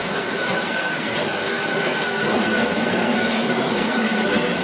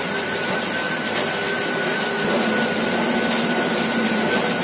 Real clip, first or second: second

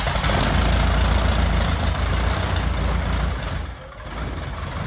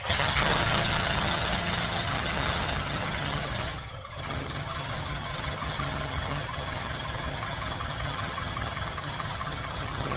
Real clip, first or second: first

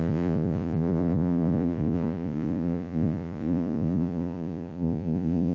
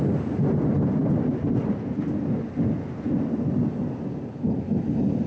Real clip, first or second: second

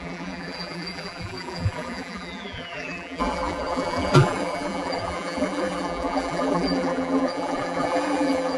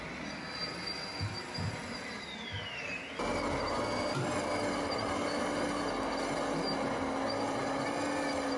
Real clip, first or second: second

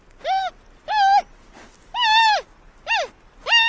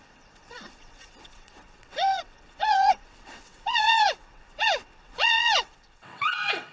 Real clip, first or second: first